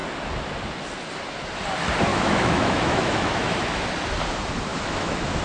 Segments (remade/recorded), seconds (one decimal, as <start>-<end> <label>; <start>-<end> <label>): 0.0-2.1 recorded; 2.1-3.8 remade; 3.8-4.7 recorded; 4.7-5.4 remade